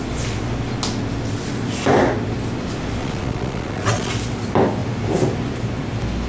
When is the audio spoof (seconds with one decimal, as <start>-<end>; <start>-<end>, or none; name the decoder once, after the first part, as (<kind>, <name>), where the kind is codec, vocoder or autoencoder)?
3.0-4.1 (vocoder, Vocos)